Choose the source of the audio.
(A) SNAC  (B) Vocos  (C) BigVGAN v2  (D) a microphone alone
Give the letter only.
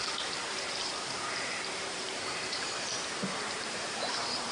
C